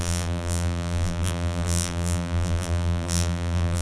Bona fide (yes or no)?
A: no